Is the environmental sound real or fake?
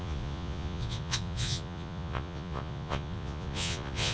fake